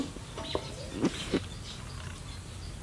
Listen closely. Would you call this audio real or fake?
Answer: real